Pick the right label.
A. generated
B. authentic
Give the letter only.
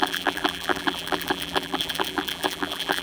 A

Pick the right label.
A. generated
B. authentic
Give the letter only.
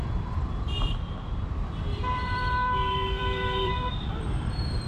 A